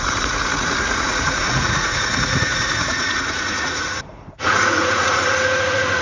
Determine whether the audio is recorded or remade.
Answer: remade